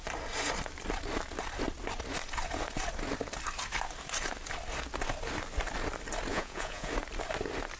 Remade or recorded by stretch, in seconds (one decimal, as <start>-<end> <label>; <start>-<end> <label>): 0.0-6.3 recorded; 6.3-6.9 remade; 6.9-7.8 recorded